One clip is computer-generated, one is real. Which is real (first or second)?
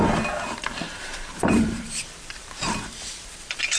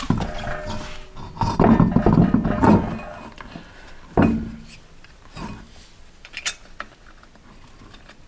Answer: second